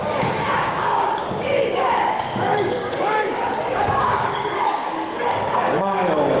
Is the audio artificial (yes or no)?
yes